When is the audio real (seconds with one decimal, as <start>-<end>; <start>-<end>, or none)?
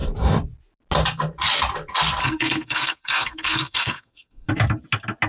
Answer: 0.0-2.2; 4.5-5.3